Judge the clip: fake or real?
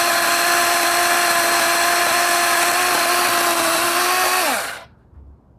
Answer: real